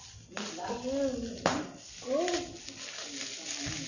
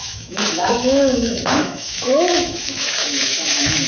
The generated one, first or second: second